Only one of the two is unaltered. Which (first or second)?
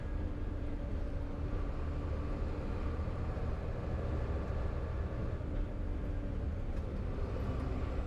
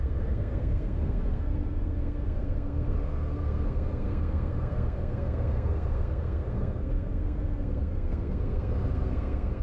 first